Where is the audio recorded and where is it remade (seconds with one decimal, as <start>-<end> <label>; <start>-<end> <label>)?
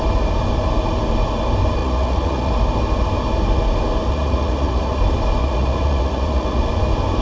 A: 0.0-1.8 recorded; 1.8-2.5 remade; 2.5-4.1 recorded; 4.1-5.0 remade; 5.0-5.4 recorded; 5.4-6.6 remade; 6.6-7.2 recorded